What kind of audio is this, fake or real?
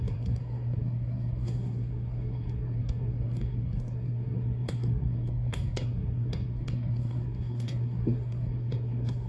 fake